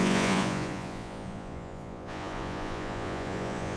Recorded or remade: remade